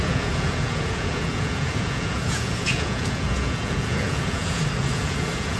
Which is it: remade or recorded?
remade